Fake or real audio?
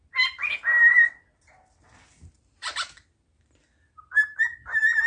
real